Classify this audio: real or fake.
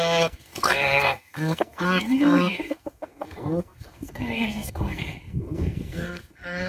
fake